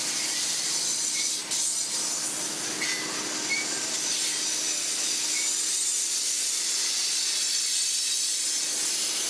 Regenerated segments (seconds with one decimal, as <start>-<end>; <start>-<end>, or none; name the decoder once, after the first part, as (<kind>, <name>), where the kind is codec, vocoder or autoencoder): 0.0-1.4 (vocoder, BigVGAN v2); 6.5-9.3